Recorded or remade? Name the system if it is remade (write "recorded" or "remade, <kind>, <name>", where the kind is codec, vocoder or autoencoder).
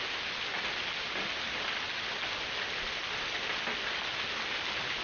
recorded